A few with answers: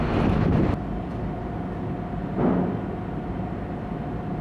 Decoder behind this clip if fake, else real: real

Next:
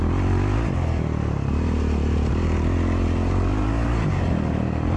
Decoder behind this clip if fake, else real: real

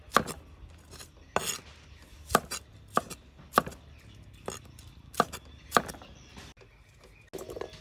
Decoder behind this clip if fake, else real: real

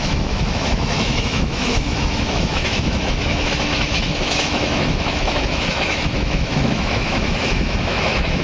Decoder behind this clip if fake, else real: fake, autoencoder, DAC-VAE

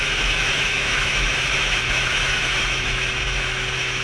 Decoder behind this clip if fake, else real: fake, autoencoder, DAC-VAE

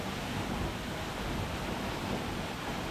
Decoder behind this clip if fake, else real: real